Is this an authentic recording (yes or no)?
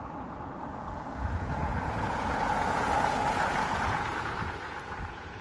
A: no